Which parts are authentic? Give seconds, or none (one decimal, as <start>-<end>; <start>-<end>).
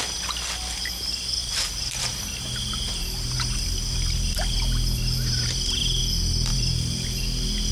0.0-1.4; 6.0-6.5; 7.2-7.7